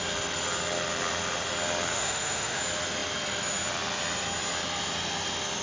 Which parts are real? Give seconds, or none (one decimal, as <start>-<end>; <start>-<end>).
0.0-1.9; 2.6-5.6